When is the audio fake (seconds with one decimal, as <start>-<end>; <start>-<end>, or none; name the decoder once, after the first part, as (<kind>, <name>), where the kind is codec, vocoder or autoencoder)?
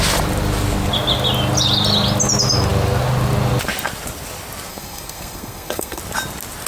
4.7-6.0 (codec, SNAC)